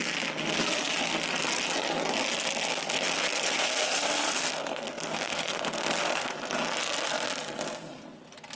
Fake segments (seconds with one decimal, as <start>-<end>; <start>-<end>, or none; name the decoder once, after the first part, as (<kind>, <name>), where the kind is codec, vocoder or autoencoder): 2.7-6.3 (codec, SNAC)